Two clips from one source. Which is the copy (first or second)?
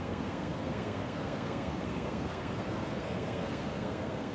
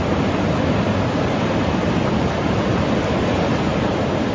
first